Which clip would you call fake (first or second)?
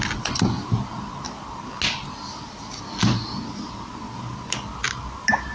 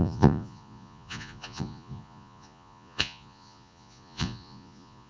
second